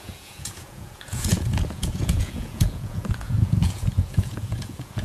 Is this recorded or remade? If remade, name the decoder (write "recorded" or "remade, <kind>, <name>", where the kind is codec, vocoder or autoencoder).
remade, vocoder, Vocos